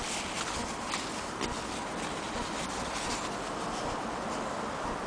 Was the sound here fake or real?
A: real